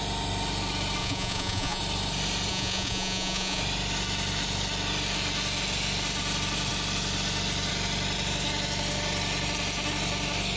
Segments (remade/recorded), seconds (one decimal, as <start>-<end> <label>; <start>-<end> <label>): 0.0-1.0 recorded; 1.0-1.8 remade; 1.8-2.5 recorded; 2.5-3.6 remade; 3.6-10.6 recorded